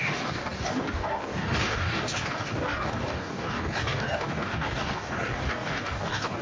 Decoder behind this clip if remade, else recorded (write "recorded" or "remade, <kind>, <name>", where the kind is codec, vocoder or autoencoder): remade, codec, DAC